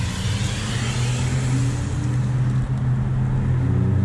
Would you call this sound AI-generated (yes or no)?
no